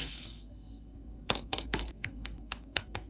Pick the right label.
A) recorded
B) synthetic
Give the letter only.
B